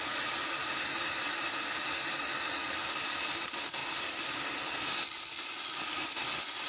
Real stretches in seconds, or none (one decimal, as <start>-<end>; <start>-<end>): 0.0-6.7